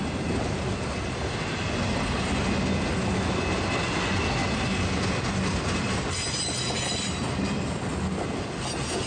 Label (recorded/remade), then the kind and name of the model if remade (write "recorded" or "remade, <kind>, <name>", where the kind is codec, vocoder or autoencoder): recorded